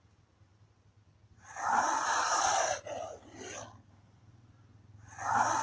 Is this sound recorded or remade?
recorded